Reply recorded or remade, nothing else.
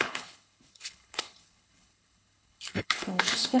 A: remade